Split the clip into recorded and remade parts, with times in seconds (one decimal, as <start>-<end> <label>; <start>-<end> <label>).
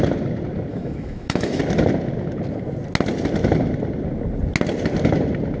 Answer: 0.0-0.7 recorded; 0.7-1.6 remade; 1.6-5.6 recorded